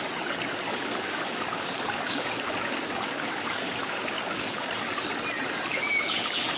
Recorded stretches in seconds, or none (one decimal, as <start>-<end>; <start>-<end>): 0.0-0.7; 4.7-5.7